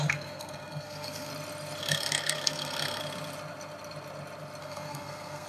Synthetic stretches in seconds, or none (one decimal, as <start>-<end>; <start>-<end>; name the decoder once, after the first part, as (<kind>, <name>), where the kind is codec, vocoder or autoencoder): 0.0-1.3 (codec, SNAC); 1.8-3.0; 4.6-5.5